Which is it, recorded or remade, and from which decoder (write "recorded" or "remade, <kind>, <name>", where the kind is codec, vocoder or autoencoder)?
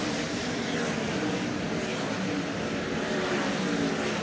recorded